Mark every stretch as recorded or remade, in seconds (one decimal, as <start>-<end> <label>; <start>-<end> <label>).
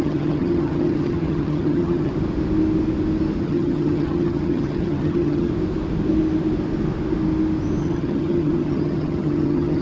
0.0-2.1 remade; 2.1-3.4 recorded; 3.4-5.5 remade; 5.5-7.8 recorded; 7.8-9.8 remade